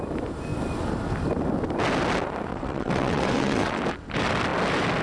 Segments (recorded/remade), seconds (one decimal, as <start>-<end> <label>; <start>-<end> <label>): 0.0-2.5 recorded; 2.5-3.8 remade; 3.8-5.0 recorded